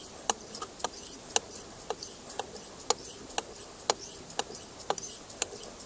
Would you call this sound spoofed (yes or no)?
no